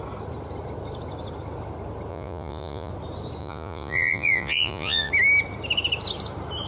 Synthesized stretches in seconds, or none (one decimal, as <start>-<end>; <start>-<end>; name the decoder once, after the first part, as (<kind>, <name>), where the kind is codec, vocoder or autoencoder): 2.1-2.9 (vocoder, Vocos); 3.4-5.1